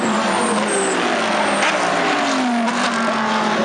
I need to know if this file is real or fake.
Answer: real